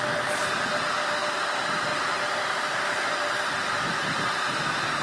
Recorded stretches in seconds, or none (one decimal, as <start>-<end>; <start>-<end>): 0.0-1.9